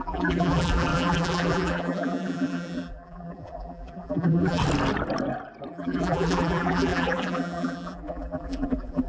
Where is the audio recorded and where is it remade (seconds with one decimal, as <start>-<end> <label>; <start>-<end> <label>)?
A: 0.0-4.6 remade; 4.6-5.7 recorded; 5.7-9.1 remade